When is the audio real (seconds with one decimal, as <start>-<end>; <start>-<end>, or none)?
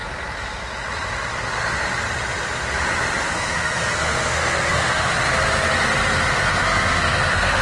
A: 0.0-3.3; 5.1-6.3